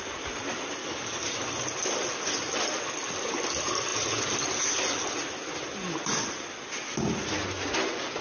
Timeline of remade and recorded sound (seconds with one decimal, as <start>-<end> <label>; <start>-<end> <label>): 0.0-0.8 recorded; 0.8-1.3 remade; 1.3-8.2 recorded